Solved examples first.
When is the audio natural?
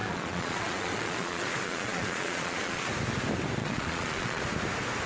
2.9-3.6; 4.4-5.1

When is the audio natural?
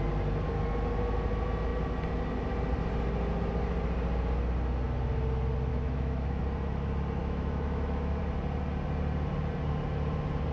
0.0-5.7; 6.4-7.2; 8.2-10.5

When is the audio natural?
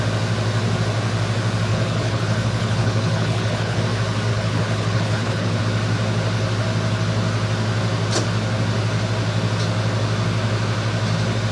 0.0-1.7; 3.8-4.3; 5.6-11.5